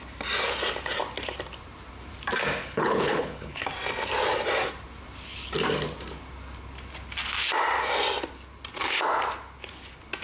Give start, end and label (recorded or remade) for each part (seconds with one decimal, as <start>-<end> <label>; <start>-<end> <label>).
0.0-2.6 recorded; 2.6-3.6 remade; 3.6-10.2 recorded